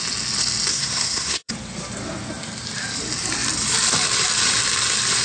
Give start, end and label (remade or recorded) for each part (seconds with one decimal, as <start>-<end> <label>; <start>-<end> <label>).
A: 0.0-0.7 recorded; 0.7-1.5 remade; 1.5-5.2 recorded